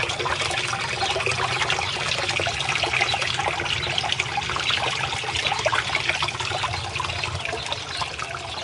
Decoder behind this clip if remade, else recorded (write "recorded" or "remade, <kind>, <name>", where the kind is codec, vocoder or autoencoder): recorded